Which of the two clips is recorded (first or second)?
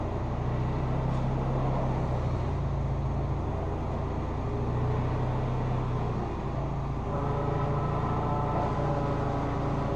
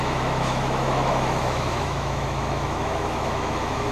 first